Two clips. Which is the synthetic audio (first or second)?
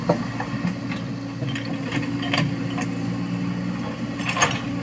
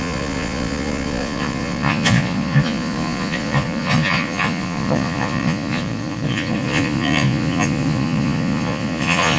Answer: second